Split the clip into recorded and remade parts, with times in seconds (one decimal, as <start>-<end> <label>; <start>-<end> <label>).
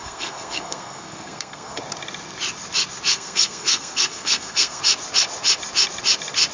0.0-1.8 remade; 1.8-3.1 recorded; 3.1-4.8 remade; 4.8-6.5 recorded